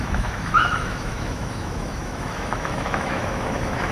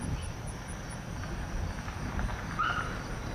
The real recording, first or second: second